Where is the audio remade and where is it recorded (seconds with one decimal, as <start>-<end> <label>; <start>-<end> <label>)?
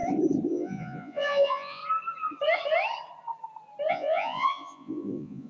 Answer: 0.0-0.5 recorded; 0.5-1.8 remade; 1.8-3.9 recorded; 3.9-5.5 remade